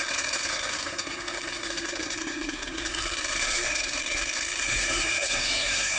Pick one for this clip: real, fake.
fake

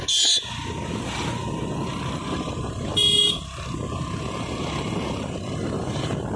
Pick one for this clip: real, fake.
real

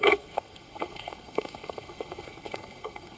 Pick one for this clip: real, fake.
fake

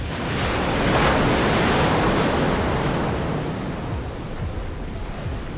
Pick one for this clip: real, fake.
real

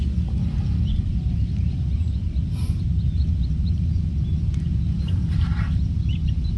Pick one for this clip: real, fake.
real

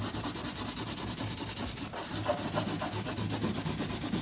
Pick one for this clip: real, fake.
real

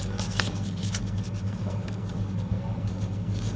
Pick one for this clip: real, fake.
fake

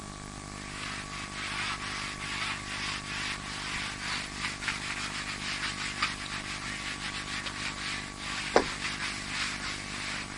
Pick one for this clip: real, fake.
real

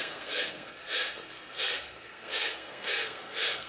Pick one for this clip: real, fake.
fake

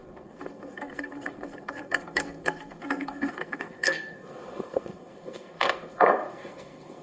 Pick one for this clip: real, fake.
fake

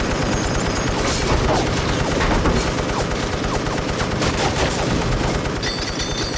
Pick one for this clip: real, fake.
real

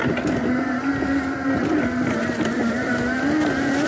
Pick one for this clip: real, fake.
real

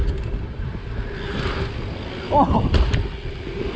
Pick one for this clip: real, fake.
real